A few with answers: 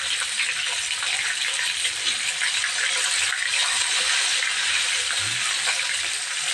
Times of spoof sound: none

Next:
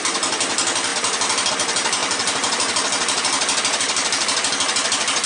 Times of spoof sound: none

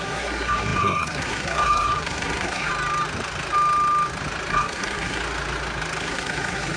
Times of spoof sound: 0.0-2.7 (codec, SNAC); 4.5-5.2; 6.0-6.8

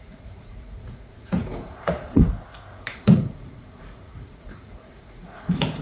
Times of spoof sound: 0.0-2.2 (vocoder, Vocos); 2.7-5.8

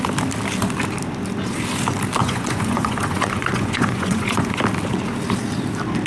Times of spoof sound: 2.2-4.6 (vocoder, Vocos)

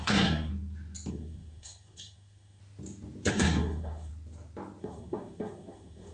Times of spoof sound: 0.0-0.5 (codec, SNAC); 1.1-2.6; 3.3-4.1; 4.8-6.1